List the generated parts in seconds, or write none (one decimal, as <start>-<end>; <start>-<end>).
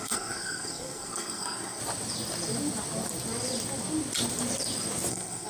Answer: 0.0-1.8; 5.1-5.5